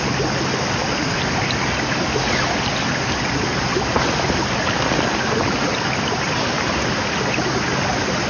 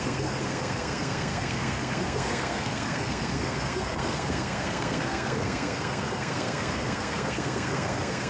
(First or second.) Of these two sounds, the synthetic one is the second